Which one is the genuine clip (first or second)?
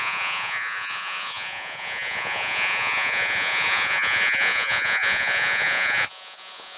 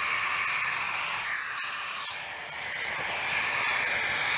second